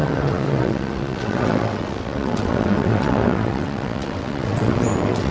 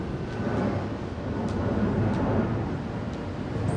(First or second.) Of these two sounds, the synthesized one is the first